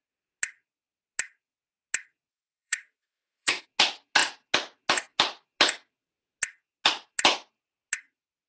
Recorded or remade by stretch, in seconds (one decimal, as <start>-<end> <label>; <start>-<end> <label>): 0.0-2.3 recorded; 2.3-3.6 remade; 3.6-8.5 recorded